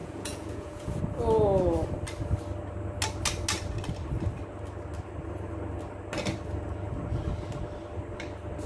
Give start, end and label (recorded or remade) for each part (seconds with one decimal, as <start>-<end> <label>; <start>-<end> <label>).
0.0-1.0 remade; 1.0-8.7 recorded